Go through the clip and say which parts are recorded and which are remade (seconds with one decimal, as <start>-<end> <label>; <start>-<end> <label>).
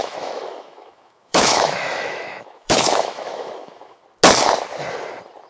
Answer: 0.0-4.0 remade; 4.0-5.5 recorded